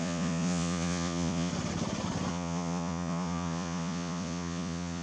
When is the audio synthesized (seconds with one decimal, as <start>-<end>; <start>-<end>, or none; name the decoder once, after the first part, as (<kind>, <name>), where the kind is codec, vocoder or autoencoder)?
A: 0.0-1.5 (vocoder, Vocos); 2.3-5.0